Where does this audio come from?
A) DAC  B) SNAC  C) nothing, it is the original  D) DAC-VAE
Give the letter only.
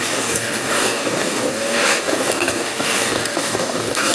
A